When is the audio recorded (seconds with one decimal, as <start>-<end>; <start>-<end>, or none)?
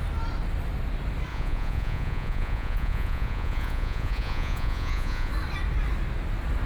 0.0-1.3; 5.3-6.7